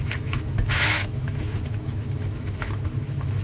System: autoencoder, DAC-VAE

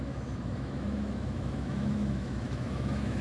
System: autoencoder, DAC-VAE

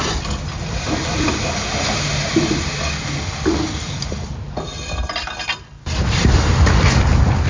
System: none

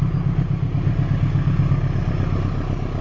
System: none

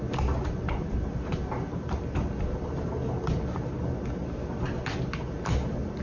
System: none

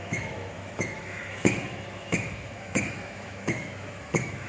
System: autoencoder, DAC-VAE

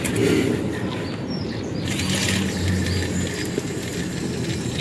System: none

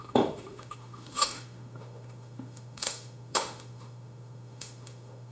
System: autoencoder, DAC-VAE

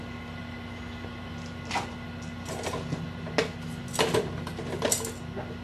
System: none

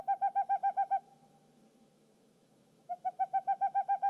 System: autoencoder, DAC-VAE